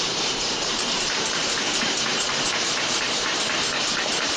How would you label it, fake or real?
fake